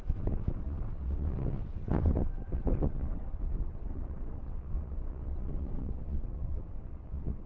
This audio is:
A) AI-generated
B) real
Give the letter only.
A